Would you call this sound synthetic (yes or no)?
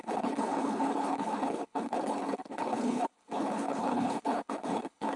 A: yes